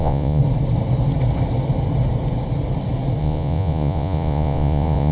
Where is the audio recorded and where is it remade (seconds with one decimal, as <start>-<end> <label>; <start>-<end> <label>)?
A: 0.0-0.4 remade; 0.4-3.2 recorded; 3.2-5.1 remade

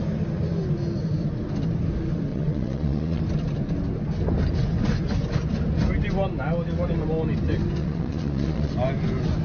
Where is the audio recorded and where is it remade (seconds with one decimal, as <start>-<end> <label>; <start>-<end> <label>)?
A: 0.0-2.3 recorded; 2.3-3.2 remade; 3.2-7.8 recorded; 7.8-8.7 remade; 8.7-9.4 recorded

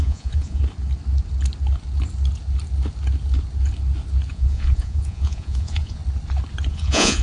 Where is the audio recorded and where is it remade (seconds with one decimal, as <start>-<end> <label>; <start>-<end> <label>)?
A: 0.0-0.6 remade; 0.6-4.3 recorded; 4.3-6.0 remade; 6.0-6.7 recorded; 6.7-7.2 remade

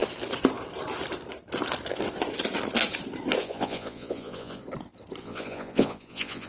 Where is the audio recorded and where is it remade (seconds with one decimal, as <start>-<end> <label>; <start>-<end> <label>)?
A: 0.0-3.4 recorded; 3.4-4.6 remade; 4.6-5.2 recorded; 5.2-6.5 remade